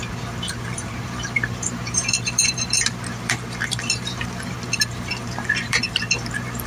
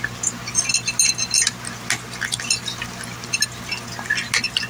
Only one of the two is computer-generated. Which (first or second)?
first